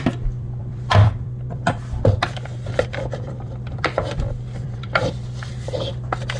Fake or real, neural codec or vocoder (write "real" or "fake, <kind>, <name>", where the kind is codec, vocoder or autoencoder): fake, vocoder, BigVGAN v2